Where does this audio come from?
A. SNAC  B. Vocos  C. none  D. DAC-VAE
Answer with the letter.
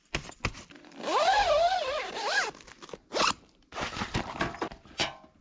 C